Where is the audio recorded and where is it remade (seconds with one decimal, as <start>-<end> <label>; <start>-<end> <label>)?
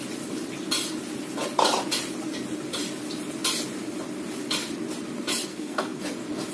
0.0-5.5 recorded; 5.5-6.0 remade; 6.0-6.5 recorded